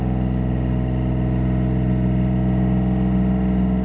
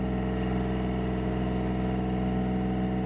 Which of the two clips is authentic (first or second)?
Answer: first